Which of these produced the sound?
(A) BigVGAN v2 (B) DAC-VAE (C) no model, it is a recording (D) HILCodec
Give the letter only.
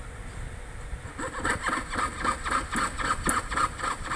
C